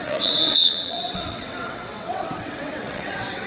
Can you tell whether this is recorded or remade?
remade